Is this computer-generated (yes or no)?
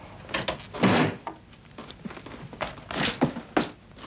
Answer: no